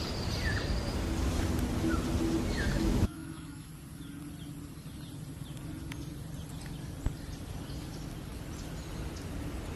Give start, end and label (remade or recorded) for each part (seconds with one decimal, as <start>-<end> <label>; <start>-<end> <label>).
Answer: 0.0-2.7 recorded; 2.7-3.7 remade; 3.7-9.8 recorded